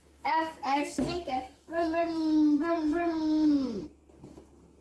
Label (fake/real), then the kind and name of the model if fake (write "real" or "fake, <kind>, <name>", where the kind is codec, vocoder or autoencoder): fake, codec, SNAC